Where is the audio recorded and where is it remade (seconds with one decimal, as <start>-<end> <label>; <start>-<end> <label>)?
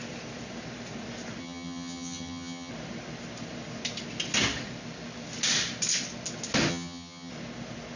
0.0-1.4 recorded; 1.4-2.7 remade; 2.7-6.7 recorded; 6.7-7.3 remade; 7.3-8.0 recorded